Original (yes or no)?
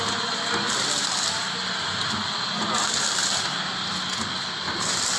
yes